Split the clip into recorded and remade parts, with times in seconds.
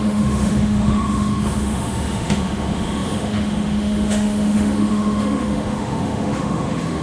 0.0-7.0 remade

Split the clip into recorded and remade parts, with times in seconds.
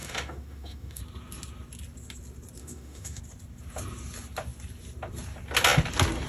0.0-1.0 remade; 1.0-2.6 recorded; 2.6-3.2 remade; 3.2-6.3 recorded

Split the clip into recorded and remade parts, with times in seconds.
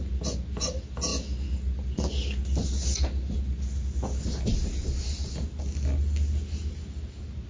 0.0-7.5 recorded